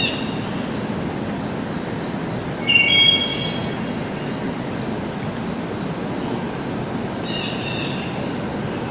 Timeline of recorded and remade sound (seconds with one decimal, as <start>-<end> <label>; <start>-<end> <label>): 0.0-8.9 recorded